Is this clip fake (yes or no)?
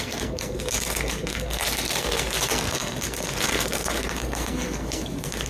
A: yes